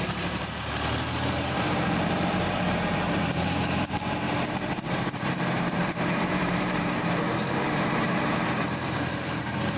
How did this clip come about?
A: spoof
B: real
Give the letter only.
A